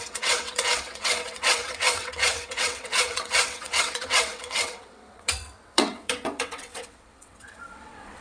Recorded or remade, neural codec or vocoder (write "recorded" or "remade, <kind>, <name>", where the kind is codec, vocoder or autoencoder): remade, vocoder, WaveNeXt